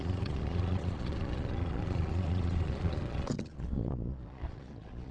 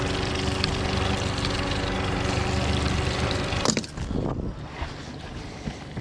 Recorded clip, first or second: second